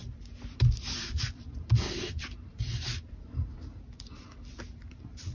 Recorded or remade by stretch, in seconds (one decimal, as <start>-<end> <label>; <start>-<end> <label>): 0.0-5.3 remade